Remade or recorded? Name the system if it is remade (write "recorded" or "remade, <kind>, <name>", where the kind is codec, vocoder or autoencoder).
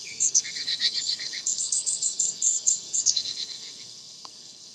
remade, codec, SNAC